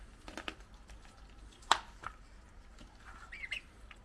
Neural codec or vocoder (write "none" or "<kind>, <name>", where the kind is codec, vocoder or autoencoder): none